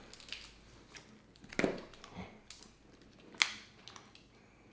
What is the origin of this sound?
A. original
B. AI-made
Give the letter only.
A